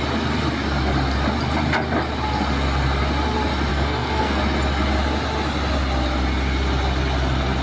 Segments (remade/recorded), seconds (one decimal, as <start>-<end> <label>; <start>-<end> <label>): 0.0-3.7 recorded; 3.7-4.4 remade; 4.4-7.6 recorded